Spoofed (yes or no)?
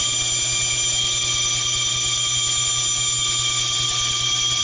no